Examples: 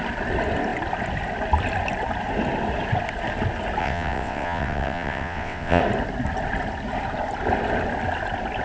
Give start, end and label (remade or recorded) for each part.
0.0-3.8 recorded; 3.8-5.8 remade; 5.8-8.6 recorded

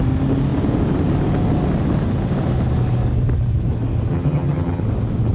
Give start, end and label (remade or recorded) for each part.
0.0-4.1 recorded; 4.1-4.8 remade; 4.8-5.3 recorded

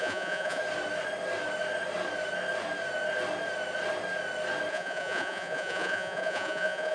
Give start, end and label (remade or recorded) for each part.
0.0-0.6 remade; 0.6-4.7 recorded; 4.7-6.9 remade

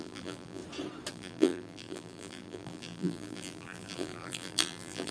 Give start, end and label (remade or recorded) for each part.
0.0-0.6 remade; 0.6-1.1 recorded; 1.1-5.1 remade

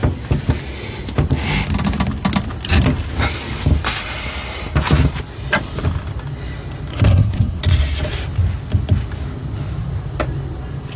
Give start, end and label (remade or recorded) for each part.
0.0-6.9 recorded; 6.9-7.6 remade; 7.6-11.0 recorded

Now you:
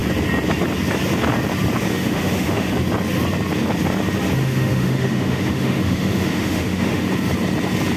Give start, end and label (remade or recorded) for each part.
0.0-1.9 recorded; 1.9-2.7 remade; 2.7-4.4 recorded; 4.4-7.1 remade; 7.1-8.0 recorded

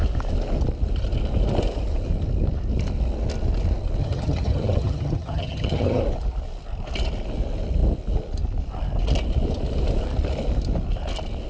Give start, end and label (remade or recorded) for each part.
0.0-4.0 recorded; 4.0-6.0 remade; 6.0-11.5 recorded

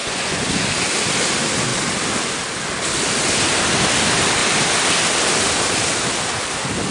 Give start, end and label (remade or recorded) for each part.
0.0-0.5 remade; 0.5-6.9 recorded